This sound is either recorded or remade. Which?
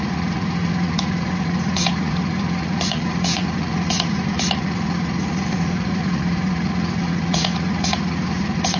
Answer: remade